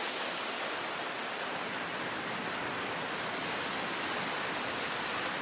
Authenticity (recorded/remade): recorded